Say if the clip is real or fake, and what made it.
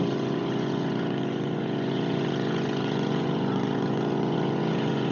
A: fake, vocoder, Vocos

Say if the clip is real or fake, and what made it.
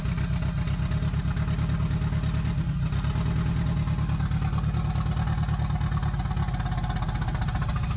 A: real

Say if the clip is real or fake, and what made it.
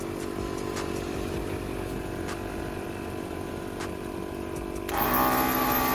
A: real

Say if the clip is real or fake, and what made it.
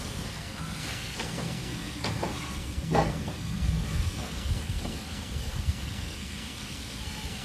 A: fake, codec, SNAC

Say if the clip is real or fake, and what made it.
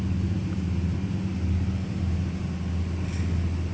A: real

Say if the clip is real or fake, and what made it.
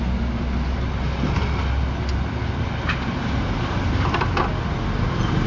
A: real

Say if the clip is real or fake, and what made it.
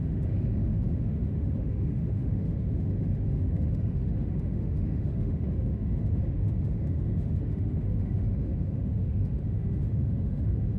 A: fake, autoencoder, DAC-VAE